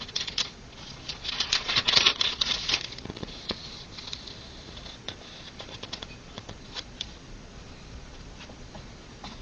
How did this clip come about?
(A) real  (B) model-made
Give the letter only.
B